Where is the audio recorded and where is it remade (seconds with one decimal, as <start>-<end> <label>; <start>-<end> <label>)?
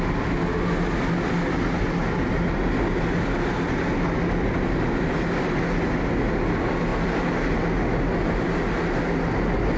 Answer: 0.0-9.8 recorded